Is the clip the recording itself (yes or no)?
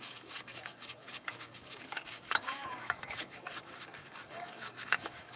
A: no